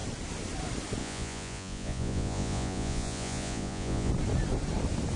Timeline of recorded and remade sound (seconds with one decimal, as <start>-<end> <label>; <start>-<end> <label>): 0.0-1.0 recorded; 1.0-4.1 remade; 4.1-5.2 recorded